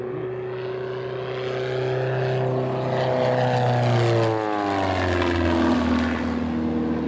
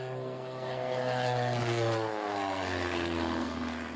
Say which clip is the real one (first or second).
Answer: first